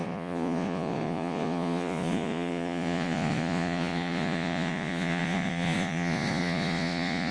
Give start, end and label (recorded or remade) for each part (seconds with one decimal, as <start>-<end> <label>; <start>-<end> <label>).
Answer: 0.0-7.3 remade